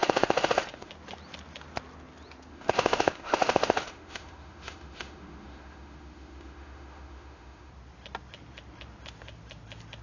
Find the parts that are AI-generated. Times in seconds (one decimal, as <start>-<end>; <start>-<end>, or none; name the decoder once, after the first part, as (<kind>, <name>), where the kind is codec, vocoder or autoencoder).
0.0-0.9 (autoencoder, DAC-VAE); 2.5-7.7